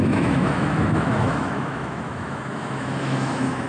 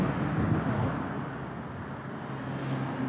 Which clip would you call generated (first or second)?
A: first